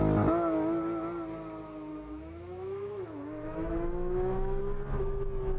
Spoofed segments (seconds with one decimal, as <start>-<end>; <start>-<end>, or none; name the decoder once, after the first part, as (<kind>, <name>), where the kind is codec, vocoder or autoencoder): 1.9-4.6 (autoencoder, DAC-VAE)